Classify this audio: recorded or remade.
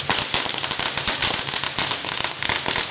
recorded